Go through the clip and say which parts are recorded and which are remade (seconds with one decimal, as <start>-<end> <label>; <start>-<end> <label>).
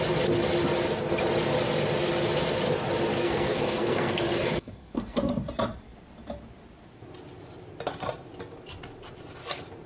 0.0-3.2 recorded; 3.2-5.3 remade; 5.3-9.9 recorded